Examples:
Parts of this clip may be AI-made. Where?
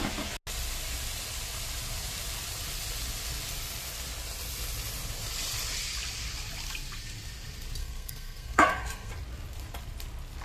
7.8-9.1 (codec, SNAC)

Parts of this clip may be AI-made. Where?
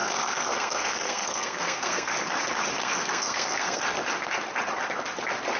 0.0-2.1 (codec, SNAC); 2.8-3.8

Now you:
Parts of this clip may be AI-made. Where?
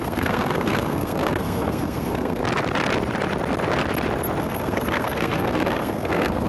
0.0-2.4 (codec, SNAC); 4.4-6.5